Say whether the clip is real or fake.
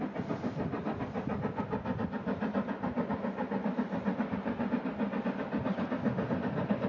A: real